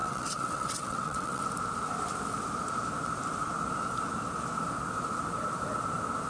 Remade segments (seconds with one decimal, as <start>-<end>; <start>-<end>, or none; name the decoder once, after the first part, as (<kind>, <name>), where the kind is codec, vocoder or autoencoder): 0.0-1.4 (vocoder, WaveNeXt)

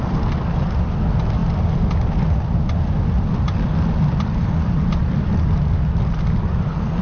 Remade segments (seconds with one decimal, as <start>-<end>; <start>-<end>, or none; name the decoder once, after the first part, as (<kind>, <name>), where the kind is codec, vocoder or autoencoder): none